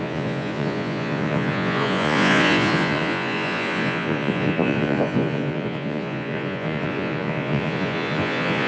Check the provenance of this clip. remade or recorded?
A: remade